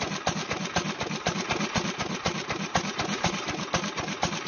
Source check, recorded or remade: recorded